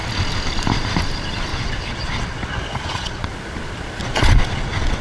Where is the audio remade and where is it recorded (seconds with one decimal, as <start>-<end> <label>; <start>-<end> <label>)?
0.0-1.5 recorded; 1.5-3.3 remade; 3.3-4.0 recorded; 4.0-5.0 remade